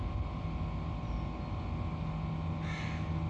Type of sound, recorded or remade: recorded